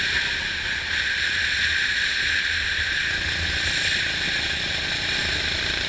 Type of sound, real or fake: real